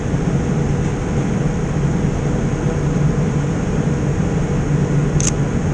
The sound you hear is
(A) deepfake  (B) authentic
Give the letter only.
B